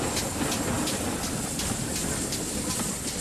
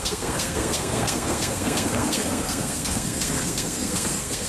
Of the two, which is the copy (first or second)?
second